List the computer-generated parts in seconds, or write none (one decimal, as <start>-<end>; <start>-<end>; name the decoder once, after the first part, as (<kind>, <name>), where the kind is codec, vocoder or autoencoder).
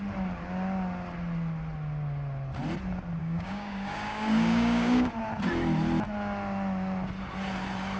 3.2-5.1 (codec, DAC)